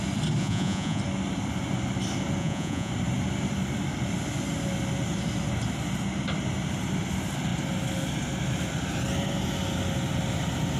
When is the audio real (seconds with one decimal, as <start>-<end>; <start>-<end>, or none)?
0.0-0.4; 1.0-2.4; 2.9-10.8